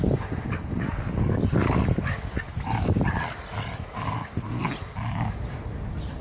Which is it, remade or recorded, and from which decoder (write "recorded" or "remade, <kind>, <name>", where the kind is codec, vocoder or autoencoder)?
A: recorded